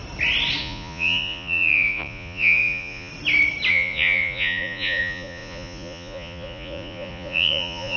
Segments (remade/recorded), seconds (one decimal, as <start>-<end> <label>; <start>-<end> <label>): 0.0-0.6 recorded; 0.6-3.1 remade; 3.1-3.7 recorded; 3.7-8.0 remade